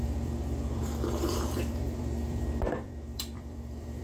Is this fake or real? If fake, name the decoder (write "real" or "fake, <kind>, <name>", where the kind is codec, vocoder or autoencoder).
fake, vocoder, BigVGAN v2